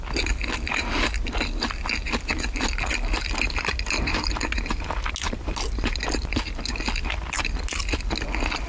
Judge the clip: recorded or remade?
recorded